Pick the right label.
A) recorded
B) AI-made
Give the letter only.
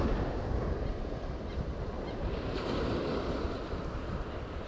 A